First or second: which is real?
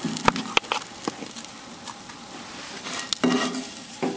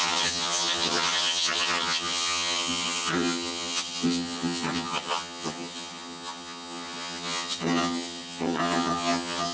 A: first